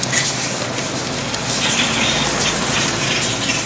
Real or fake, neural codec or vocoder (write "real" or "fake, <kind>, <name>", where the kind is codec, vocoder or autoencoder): real